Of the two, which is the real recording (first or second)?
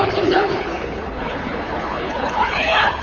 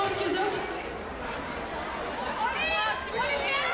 second